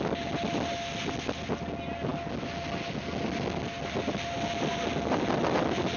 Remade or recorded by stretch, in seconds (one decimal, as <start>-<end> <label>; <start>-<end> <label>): 0.0-6.0 recorded